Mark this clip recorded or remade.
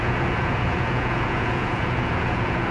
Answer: remade